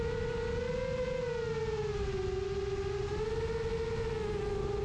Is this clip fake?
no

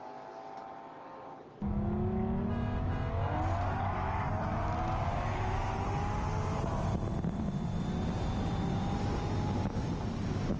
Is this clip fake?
no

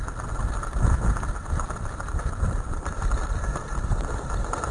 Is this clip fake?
no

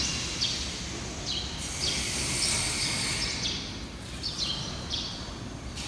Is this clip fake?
no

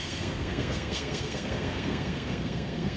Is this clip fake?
yes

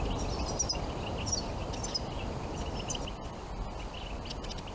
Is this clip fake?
no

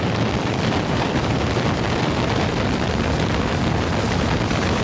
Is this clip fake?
no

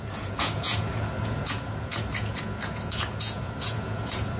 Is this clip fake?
yes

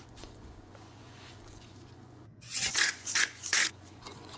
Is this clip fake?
yes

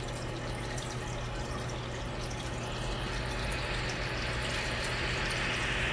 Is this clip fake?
no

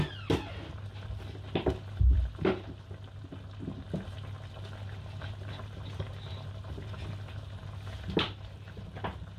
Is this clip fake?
no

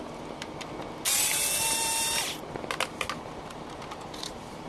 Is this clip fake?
no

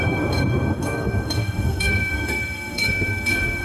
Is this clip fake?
yes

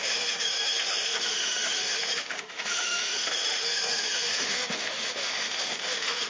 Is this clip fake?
yes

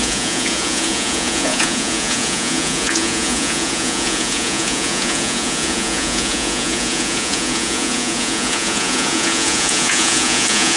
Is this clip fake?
yes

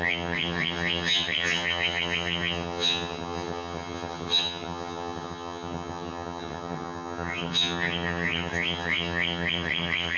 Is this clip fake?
yes